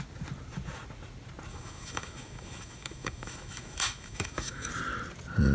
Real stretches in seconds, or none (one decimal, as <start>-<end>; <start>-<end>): 0.0-1.5; 4.7-5.5